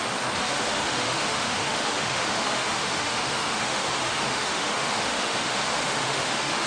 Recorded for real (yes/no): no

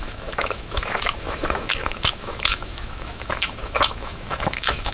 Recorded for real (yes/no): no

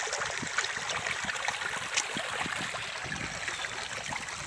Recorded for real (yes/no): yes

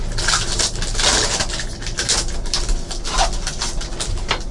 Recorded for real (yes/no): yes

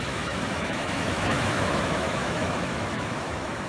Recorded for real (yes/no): no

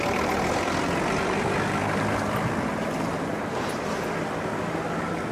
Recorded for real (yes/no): yes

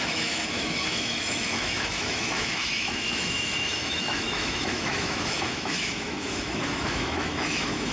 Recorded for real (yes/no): no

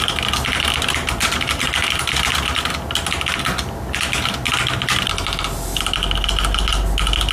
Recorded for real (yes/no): yes